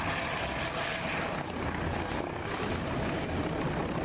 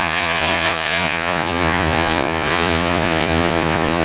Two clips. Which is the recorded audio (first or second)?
first